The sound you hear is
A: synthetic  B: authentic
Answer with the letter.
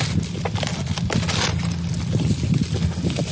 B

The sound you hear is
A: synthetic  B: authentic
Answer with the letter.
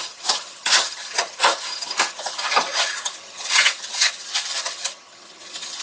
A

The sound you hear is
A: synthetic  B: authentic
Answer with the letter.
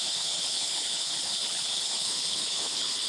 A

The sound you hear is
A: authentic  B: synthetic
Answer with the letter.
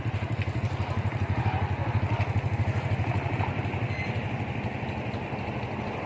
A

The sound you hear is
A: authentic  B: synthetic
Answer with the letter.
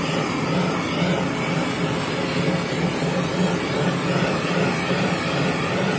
A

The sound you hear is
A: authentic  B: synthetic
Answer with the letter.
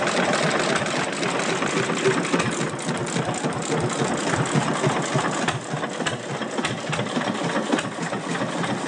A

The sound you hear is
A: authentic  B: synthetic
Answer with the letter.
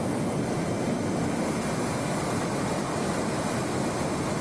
A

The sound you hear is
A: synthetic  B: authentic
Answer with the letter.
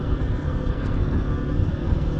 A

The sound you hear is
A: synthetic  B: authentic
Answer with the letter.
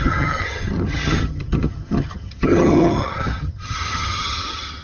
A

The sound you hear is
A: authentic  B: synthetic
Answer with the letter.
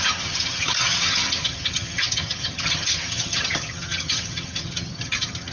B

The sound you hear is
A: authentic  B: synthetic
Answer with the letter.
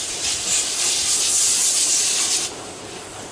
A